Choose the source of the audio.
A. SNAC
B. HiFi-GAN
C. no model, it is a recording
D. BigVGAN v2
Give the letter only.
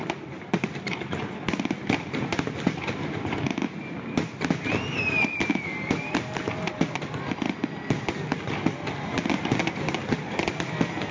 C